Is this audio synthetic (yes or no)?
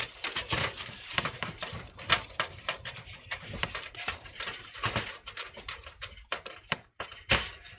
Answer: yes